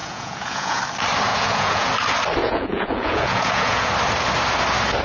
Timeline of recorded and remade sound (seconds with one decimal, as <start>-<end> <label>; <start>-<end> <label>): 0.0-0.8 remade; 0.8-1.3 recorded; 1.3-1.9 remade; 1.9-2.4 recorded; 2.4-3.9 remade; 3.9-5.0 recorded